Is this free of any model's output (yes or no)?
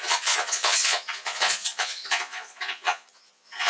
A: no